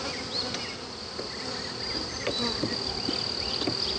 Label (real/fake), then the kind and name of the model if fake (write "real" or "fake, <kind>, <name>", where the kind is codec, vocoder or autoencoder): real